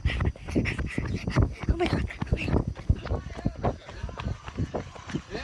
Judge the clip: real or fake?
real